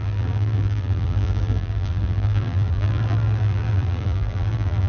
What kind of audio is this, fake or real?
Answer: fake